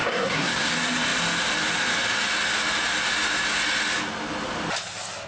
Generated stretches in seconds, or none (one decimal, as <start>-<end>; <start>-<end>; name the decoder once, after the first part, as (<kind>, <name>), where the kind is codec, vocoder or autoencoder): 0.0-0.7 (codec, SNAC)